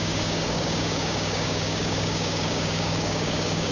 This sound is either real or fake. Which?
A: fake